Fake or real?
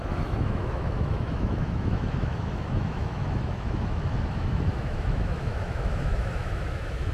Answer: fake